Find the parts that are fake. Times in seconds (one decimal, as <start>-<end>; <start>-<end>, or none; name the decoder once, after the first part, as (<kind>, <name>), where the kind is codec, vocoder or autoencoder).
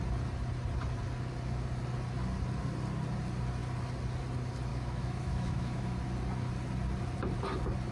4.7-6.0 (autoencoder, DAC-VAE)